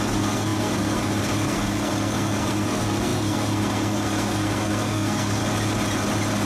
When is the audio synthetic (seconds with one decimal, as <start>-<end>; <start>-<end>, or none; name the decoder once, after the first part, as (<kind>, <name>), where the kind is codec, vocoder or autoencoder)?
0.0-5.4 (codec, SNAC)